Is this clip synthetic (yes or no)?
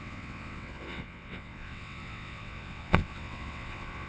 yes